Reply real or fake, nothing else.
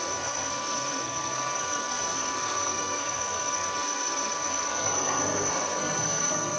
fake